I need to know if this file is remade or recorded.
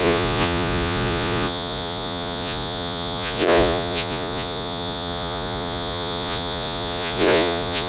remade